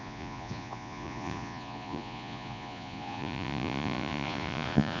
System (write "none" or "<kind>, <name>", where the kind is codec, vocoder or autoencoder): vocoder, Vocos